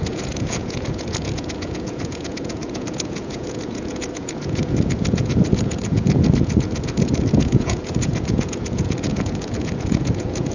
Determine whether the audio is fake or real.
fake